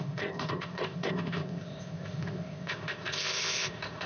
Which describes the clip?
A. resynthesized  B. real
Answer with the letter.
A